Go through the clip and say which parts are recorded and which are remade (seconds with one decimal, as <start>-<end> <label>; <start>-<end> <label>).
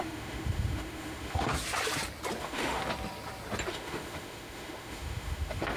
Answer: 0.0-1.5 remade; 1.5-2.4 recorded; 2.4-2.8 remade; 2.8-3.7 recorded; 3.7-5.8 remade